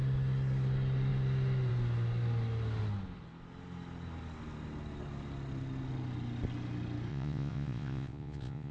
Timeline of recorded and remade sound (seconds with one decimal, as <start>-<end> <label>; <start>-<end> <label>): 0.0-7.1 recorded; 7.1-8.7 remade